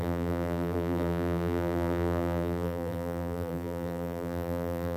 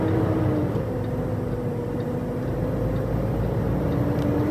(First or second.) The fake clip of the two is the first